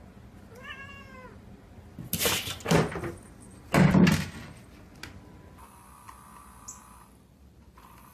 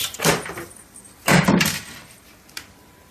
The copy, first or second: second